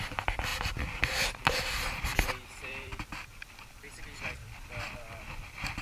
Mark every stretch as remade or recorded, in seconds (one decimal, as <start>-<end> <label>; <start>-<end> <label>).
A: 0.0-5.8 remade